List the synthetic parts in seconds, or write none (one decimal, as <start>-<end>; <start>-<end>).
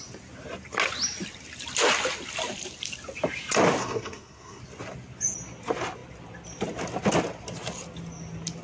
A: 3.8-4.6